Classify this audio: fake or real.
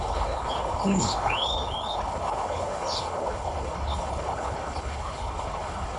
fake